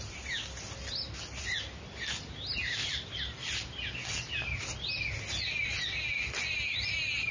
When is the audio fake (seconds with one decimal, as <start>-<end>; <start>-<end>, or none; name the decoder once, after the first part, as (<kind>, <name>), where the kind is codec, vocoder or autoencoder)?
none